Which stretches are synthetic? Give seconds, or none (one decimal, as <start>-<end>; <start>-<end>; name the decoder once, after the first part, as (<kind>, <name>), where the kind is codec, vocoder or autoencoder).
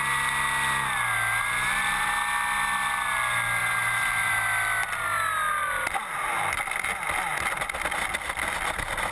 1.6-2.1 (vocoder, BigVGAN v2); 3.6-4.3